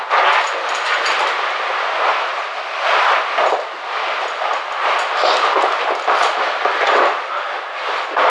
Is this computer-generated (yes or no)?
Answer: no